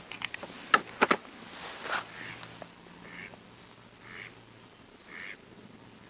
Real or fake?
real